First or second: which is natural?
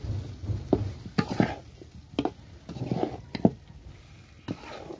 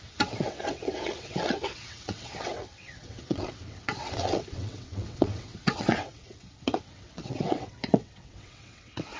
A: first